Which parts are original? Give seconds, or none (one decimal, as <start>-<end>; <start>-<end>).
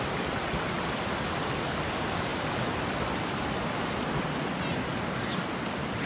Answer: 0.0-6.1